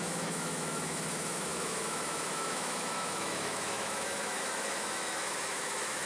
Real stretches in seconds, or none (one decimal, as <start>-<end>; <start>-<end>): none